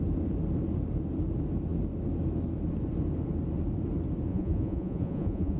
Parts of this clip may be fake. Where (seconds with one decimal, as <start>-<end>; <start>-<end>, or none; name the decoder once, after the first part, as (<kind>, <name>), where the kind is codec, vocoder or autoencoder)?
4.3-5.6 (vocoder, Vocos)